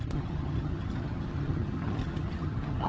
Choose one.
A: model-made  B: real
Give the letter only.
A